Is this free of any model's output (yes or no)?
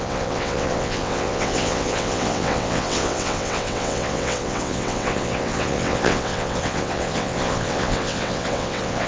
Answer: no